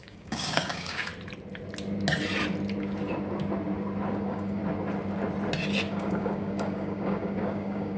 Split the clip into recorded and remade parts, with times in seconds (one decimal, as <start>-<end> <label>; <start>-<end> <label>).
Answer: 0.0-1.1 remade; 1.1-4.1 recorded; 4.1-4.6 remade; 4.6-5.9 recorded; 5.9-8.0 remade